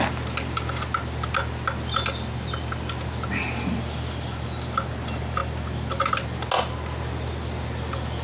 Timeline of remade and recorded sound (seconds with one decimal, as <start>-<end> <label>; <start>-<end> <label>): 0.0-8.2 recorded